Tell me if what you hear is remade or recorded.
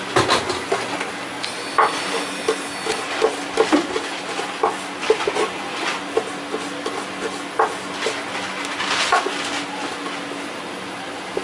recorded